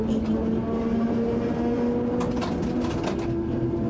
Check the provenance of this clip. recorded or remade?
recorded